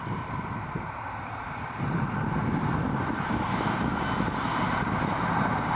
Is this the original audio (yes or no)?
yes